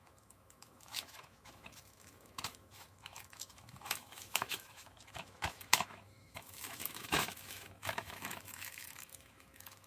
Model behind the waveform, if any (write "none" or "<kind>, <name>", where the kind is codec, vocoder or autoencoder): autoencoder, DAC-VAE